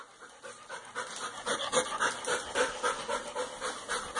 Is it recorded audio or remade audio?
recorded